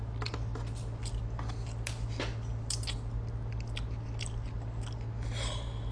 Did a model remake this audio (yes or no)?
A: no